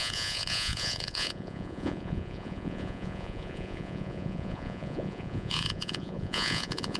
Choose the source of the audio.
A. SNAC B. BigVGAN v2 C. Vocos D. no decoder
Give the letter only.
C